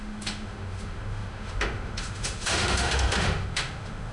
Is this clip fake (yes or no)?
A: yes